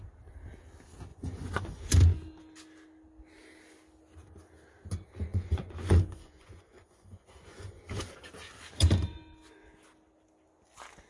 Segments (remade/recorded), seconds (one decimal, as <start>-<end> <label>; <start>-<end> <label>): 0.0-1.1 recorded; 1.1-1.8 remade; 1.8-5.3 recorded; 5.3-7.8 remade; 7.8-11.1 recorded

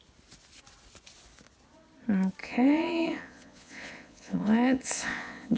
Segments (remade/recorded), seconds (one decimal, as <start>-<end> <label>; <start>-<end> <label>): 0.0-2.4 recorded; 2.4-5.6 remade

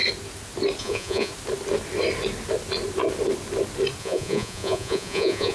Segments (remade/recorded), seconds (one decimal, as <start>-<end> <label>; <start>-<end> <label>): 0.0-0.8 recorded; 0.8-1.3 remade; 1.3-4.0 recorded; 4.0-5.5 remade

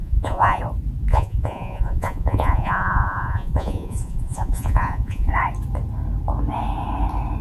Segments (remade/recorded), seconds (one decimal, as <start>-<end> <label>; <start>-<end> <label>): 0.0-0.6 remade; 0.6-1.1 recorded; 1.1-5.3 remade; 5.3-7.4 recorded

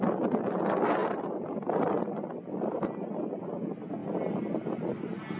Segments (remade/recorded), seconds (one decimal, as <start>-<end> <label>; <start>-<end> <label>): 0.0-5.4 recorded

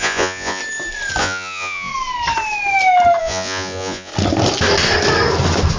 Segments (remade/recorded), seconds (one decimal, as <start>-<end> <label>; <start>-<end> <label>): 0.0-0.6 remade; 0.6-1.2 recorded; 1.2-1.9 remade; 1.9-3.2 recorded; 3.2-4.1 remade; 4.1-5.8 recorded

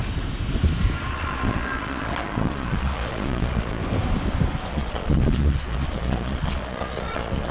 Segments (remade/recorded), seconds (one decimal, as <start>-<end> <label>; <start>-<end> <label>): 0.0-1.1 recorded; 1.1-3.8 remade; 3.8-4.7 recorded; 4.7-7.5 remade